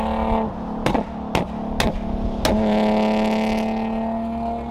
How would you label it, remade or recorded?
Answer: recorded